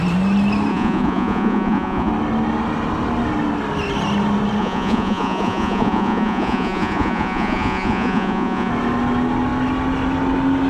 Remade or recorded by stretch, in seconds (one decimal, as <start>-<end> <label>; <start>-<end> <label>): 0.0-0.7 recorded; 0.7-2.1 remade; 2.1-4.6 recorded; 4.6-8.7 remade; 8.7-10.7 recorded